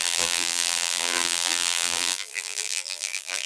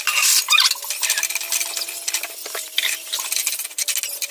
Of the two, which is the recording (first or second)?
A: second